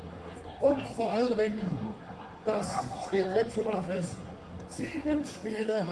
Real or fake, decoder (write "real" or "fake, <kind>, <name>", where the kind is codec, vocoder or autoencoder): fake, codec, SNAC